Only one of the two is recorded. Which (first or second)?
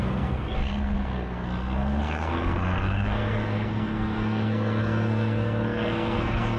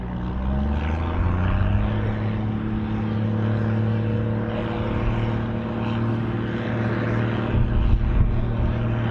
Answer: second